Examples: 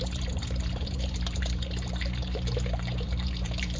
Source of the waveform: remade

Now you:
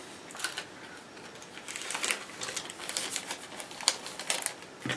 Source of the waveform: recorded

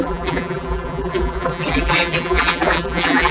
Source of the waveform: remade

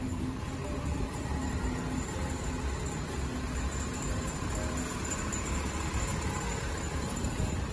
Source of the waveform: recorded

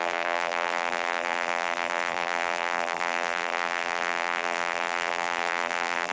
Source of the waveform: remade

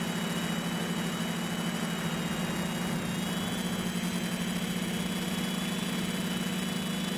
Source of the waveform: recorded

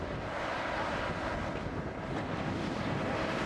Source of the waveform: remade